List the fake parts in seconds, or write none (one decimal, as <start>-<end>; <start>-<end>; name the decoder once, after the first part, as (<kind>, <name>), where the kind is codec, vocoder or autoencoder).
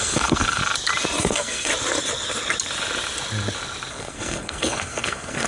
0.0-0.6 (codec, SNAC); 1.2-1.7; 3.9-5.5